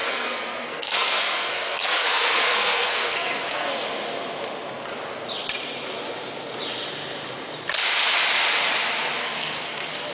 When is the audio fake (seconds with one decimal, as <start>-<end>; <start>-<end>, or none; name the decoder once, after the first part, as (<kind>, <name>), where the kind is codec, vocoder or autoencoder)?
0.0-3.7 (codec, SNAC); 9.2-10.1